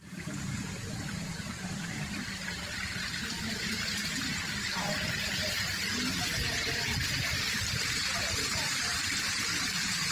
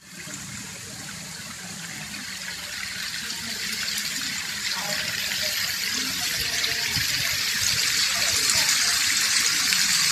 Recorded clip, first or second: second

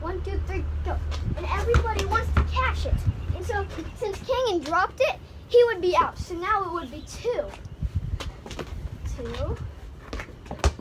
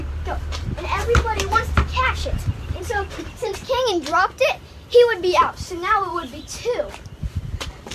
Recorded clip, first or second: first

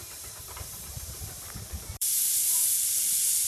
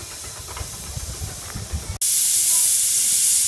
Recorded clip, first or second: second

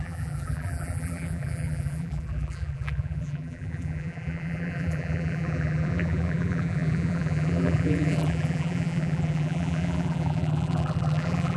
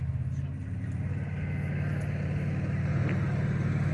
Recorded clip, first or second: second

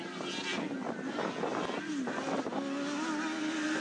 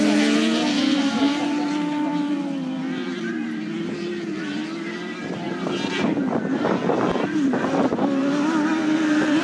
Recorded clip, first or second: first